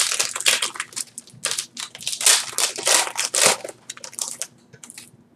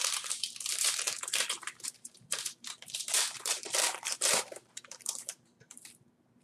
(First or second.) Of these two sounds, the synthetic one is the second